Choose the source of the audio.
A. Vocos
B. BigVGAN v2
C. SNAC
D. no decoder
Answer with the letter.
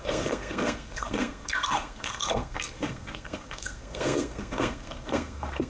C